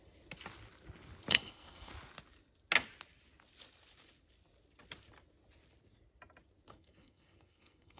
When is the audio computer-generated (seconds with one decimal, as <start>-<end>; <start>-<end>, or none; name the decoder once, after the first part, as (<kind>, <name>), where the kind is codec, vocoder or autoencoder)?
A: 1.3-1.9 (codec, SNAC); 6.7-8.0